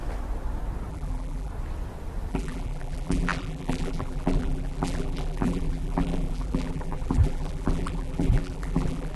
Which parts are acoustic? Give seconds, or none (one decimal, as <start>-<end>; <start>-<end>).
0.0-0.9; 1.5-2.3